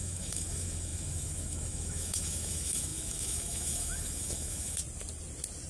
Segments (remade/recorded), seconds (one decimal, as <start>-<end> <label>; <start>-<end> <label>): 0.0-4.8 remade; 4.8-5.7 recorded